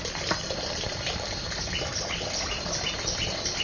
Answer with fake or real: real